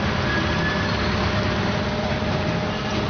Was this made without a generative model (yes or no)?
yes